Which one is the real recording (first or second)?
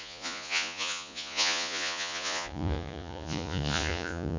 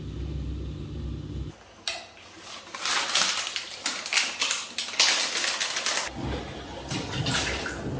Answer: second